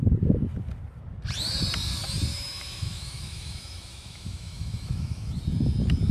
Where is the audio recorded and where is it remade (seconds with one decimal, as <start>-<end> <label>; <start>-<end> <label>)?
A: 0.0-2.3 recorded; 2.3-5.4 remade; 5.4-6.1 recorded